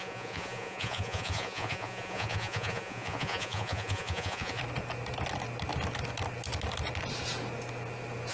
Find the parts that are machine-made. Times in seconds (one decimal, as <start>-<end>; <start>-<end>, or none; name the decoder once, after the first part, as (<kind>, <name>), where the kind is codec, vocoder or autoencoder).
0.0-4.6 (vocoder, Vocos)